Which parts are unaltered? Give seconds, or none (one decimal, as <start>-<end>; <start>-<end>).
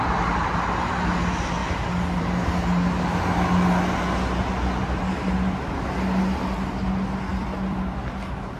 0.0-7.3; 8.0-8.6